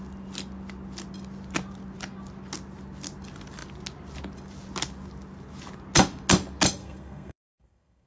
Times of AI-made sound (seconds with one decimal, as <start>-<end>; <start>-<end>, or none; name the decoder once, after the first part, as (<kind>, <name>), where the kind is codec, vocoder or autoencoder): 6.8-8.1 (codec, SNAC)